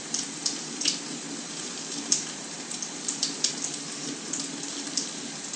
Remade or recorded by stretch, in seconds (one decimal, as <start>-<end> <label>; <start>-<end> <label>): 0.0-0.4 recorded; 0.4-3.5 remade; 3.5-5.6 recorded